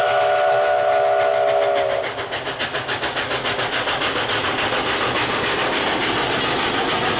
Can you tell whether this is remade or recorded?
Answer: recorded